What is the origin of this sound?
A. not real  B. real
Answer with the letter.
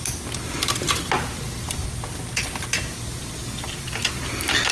B